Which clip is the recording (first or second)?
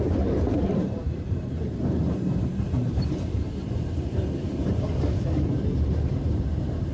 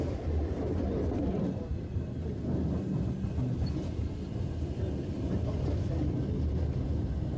second